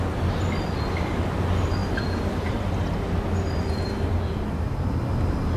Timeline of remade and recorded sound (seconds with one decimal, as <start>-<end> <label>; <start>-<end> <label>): 0.0-5.6 recorded